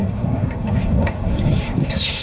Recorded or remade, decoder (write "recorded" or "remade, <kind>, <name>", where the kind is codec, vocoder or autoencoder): remade, codec, SNAC